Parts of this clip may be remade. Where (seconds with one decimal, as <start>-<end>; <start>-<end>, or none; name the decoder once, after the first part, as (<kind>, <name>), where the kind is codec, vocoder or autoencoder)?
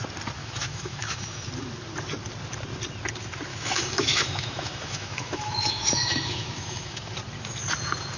0.4-1.5 (autoencoder, DAC-VAE); 3.5-7.1